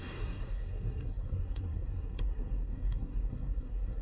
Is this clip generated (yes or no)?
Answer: yes